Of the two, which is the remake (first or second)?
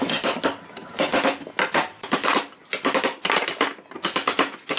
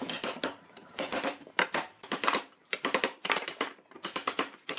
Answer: second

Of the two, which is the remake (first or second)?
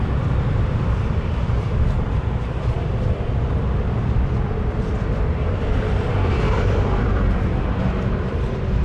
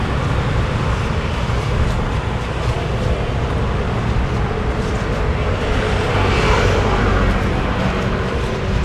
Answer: first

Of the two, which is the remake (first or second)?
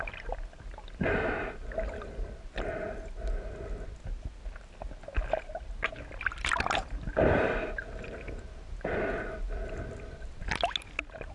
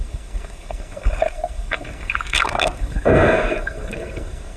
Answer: second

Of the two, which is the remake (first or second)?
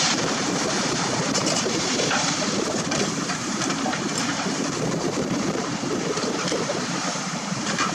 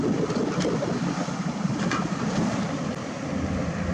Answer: first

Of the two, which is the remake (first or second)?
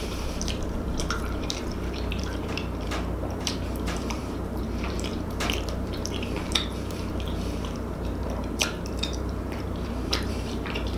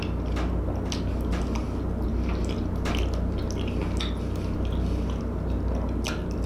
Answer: first